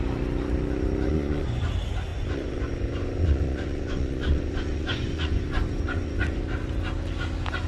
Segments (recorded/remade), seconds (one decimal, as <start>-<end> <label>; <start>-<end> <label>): 0.0-1.1 recorded; 1.1-1.6 remade; 1.6-2.1 recorded; 2.1-6.4 remade; 6.4-7.7 recorded